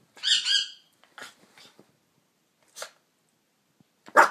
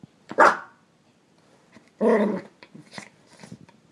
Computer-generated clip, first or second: second